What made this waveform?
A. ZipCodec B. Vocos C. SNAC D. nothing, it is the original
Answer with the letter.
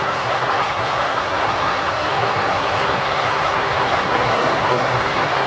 C